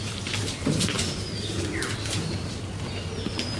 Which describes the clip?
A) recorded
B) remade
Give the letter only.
A